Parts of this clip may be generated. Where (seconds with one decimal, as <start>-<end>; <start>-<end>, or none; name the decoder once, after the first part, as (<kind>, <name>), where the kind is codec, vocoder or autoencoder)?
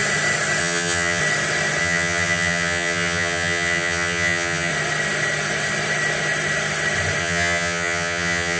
0.6-1.2 (vocoder, HiFi-GAN); 1.8-4.7; 7.2-8.6